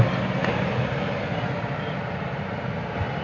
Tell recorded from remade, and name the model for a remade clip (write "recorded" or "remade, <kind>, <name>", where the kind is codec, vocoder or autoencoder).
recorded